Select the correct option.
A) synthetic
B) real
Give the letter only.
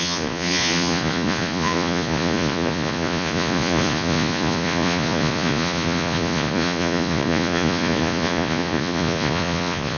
A